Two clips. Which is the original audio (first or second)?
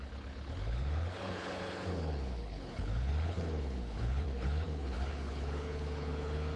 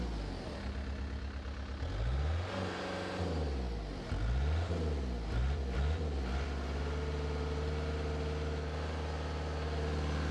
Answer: second